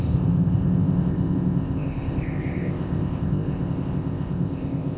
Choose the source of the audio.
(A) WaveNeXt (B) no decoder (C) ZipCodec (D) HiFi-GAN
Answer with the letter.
C